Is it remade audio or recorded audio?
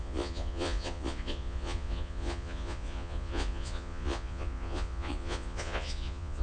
remade